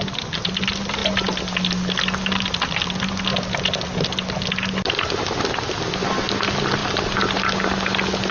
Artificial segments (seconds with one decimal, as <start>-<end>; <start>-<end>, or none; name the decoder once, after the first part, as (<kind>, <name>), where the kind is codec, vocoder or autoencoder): none